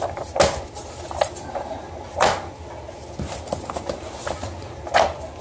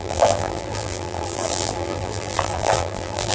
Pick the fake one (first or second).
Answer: second